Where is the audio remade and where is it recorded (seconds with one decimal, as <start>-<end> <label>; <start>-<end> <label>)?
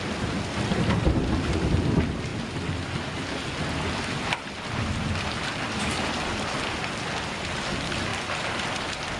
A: 0.0-9.2 recorded